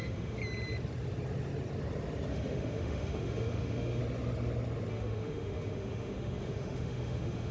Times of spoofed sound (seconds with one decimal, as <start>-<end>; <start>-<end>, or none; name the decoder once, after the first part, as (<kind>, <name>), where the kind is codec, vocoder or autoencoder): 0.0-0.4 (autoencoder, DAC-VAE); 2.3-4.0; 4.9-7.5